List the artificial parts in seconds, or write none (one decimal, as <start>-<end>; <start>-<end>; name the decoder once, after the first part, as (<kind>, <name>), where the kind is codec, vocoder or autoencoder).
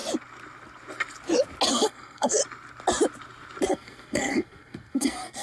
1.7-2.4 (codec, SNAC); 3.7-5.4